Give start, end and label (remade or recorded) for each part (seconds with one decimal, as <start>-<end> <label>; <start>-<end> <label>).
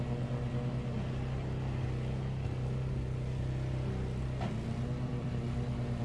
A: 0.0-5.1 recorded; 5.1-6.0 remade